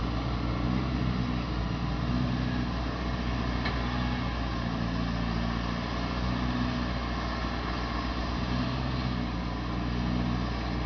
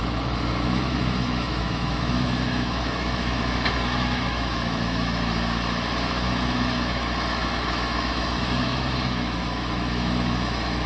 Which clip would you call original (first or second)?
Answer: first